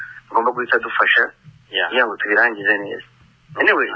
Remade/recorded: recorded